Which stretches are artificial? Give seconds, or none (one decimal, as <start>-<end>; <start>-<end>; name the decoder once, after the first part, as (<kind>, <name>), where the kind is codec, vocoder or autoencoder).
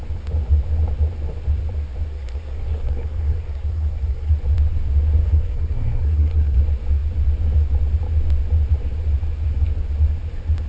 2.1-4.3 (codec, SNAC); 5.2-6.6